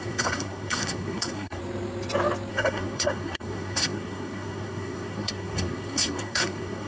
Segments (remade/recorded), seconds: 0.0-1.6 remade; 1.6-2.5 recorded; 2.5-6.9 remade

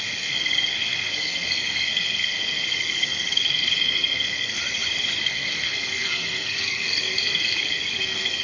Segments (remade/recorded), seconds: 0.0-4.6 remade; 4.6-5.2 recorded; 5.2-8.4 remade

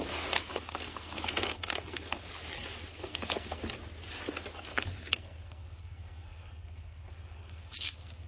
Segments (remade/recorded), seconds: 0.0-2.3 remade; 2.3-2.9 recorded; 2.9-3.6 remade; 3.6-4.6 recorded; 4.6-8.3 remade

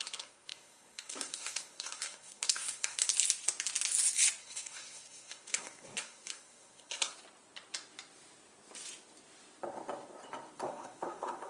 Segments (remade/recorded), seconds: 0.0-3.1 remade; 3.1-4.4 recorded; 4.4-7.1 remade; 7.1-10.6 recorded; 10.6-11.5 remade

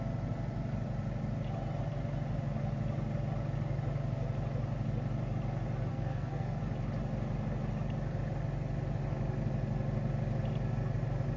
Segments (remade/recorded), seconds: 0.0-5.9 recorded; 5.9-6.6 remade; 6.6-11.4 recorded

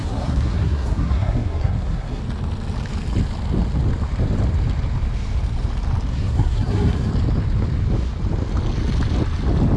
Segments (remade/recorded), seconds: 0.0-2.2 remade; 2.2-6.1 recorded; 6.1-7.1 remade; 7.1-9.8 recorded

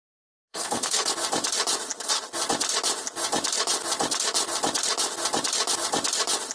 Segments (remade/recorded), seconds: 0.0-0.5 recorded; 0.5-1.1 remade; 1.1-6.5 recorded